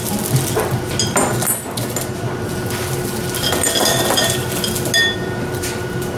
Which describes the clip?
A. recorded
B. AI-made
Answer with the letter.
A